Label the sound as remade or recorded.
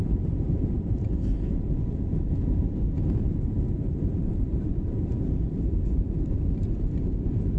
remade